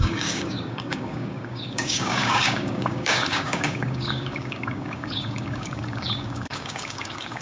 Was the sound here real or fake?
fake